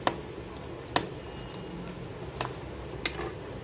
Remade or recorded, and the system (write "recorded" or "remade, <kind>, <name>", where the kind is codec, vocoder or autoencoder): recorded